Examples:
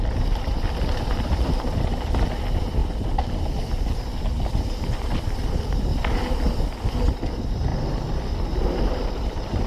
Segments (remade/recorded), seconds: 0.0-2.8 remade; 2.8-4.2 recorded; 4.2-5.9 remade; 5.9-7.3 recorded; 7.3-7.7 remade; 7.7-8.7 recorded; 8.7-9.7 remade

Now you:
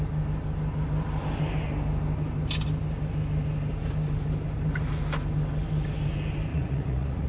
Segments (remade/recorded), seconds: 0.0-6.5 recorded; 6.5-7.3 remade

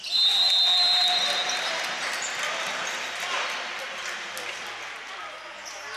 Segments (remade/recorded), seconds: 0.0-2.1 recorded; 2.1-4.7 remade; 4.7-6.0 recorded

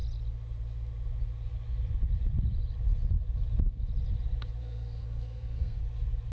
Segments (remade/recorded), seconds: 0.0-4.6 recorded; 4.6-5.8 remade; 5.8-6.3 recorded

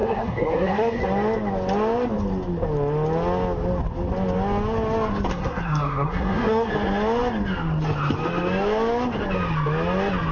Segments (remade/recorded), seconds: 0.0-1.0 remade; 1.0-5.3 recorded; 5.3-6.7 remade; 6.7-10.3 recorded

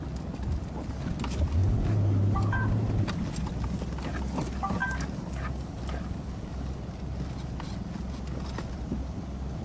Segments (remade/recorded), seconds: 0.0-9.6 recorded

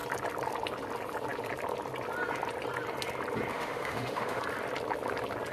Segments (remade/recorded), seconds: 0.0-3.5 recorded; 3.5-4.4 remade; 4.4-5.5 recorded